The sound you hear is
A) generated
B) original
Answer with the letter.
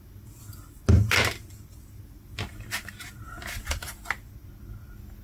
B